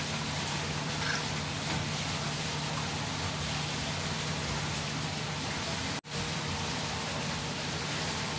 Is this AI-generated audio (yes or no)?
no